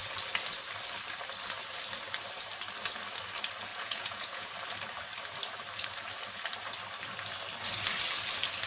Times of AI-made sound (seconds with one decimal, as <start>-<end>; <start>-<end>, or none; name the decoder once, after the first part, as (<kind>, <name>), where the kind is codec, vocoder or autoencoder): 3.7-4.5 (vocoder, Vocos)

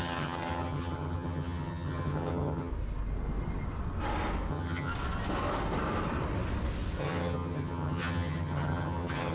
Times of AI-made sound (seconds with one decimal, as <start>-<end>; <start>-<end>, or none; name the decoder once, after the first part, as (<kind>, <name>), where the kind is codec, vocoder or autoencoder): 0.0-2.7 (vocoder, HiFi-GAN); 4.5-4.9; 7.0-9.3

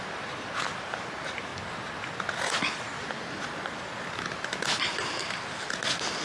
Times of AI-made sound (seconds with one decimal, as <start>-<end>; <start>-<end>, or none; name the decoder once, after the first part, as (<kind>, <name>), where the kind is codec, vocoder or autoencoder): none

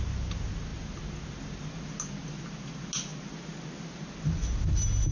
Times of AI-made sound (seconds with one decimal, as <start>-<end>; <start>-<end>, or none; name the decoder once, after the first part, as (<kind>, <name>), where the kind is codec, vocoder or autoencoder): none

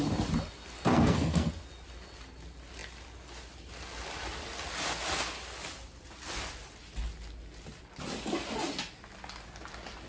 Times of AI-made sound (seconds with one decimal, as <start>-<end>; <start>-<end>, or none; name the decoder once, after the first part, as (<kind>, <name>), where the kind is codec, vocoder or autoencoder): 0.9-1.5 (codec, SNAC)